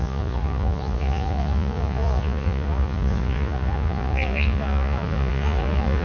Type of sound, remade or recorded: remade